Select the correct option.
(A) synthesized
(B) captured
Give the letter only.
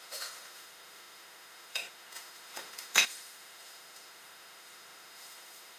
A